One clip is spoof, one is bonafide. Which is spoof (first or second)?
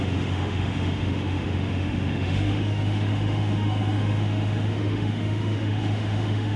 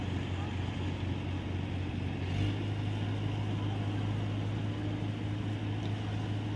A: first